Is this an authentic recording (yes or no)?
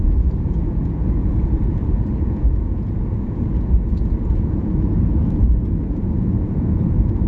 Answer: no